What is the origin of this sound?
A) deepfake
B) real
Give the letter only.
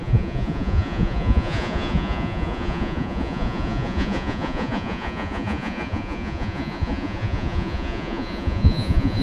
A